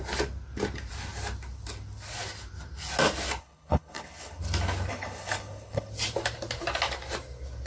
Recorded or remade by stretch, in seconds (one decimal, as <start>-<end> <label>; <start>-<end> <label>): 0.0-3.4 recorded; 3.4-4.4 remade; 4.4-4.9 recorded; 4.9-5.9 remade; 5.9-7.7 recorded